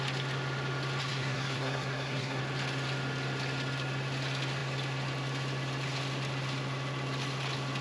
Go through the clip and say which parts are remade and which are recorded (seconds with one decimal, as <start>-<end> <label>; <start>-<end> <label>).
0.0-1.0 recorded; 1.0-2.4 remade; 2.4-7.8 recorded